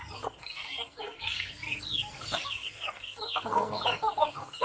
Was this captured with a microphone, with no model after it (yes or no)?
no